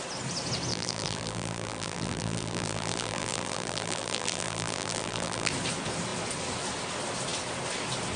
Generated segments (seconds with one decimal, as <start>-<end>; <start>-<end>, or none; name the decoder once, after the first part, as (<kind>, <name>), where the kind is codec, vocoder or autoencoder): 0.7-5.5 (vocoder, BigVGAN v2)